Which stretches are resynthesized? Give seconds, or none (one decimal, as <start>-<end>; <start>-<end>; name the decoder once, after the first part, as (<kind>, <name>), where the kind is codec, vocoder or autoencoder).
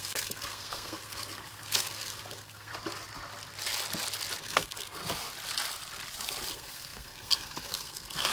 0.0-2.7 (codec, SNAC); 4.4-5.0; 6.5-8.3